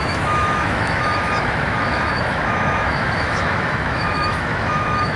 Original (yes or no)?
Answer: no